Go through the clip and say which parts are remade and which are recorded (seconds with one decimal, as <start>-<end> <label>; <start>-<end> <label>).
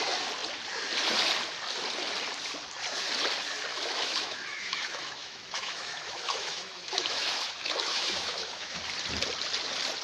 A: 0.0-3.7 recorded; 3.7-8.8 remade; 8.8-10.0 recorded